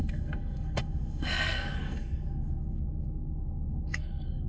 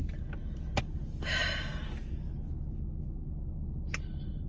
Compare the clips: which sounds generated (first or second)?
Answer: first